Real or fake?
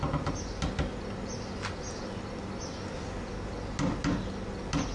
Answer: real